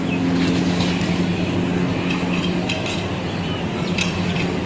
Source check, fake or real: real